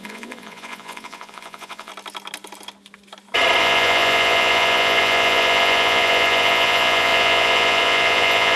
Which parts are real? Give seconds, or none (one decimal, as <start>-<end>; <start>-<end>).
1.9-3.6